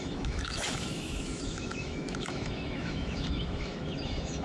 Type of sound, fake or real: fake